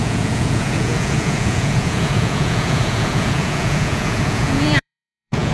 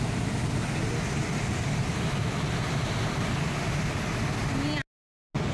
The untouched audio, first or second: second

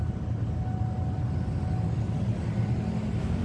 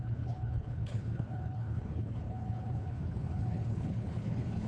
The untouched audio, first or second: first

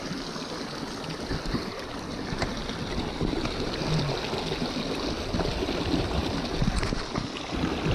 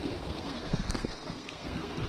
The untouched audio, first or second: first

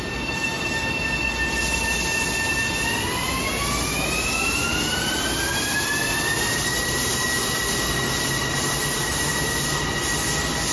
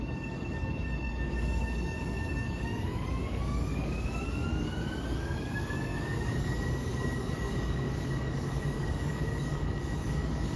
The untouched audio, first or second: first